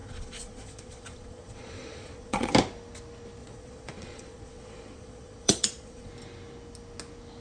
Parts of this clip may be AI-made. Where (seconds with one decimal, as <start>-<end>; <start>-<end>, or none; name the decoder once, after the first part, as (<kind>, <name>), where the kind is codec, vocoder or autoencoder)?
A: 0.0-2.5 (vocoder, Vocos); 3.4-6.1